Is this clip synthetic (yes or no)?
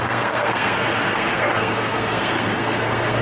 yes